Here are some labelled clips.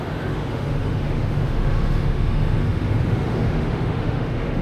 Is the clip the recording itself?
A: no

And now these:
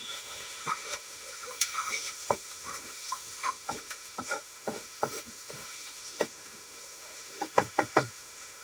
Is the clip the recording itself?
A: no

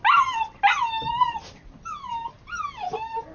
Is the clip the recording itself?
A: yes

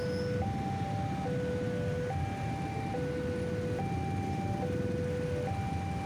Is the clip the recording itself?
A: yes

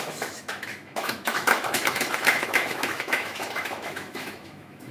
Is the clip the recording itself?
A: no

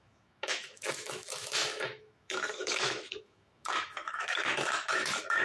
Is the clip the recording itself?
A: no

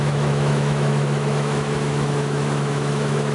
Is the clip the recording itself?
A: no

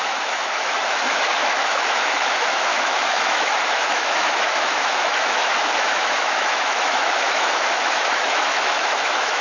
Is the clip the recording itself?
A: no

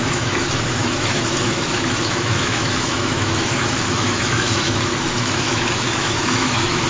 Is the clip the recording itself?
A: no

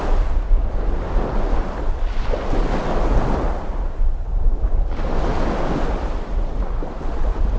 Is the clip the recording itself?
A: yes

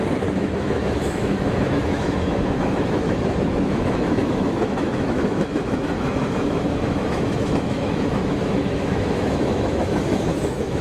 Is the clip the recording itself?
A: no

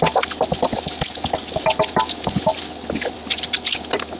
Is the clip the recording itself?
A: yes